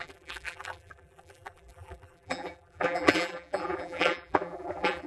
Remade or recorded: remade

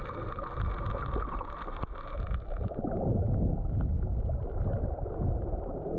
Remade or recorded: recorded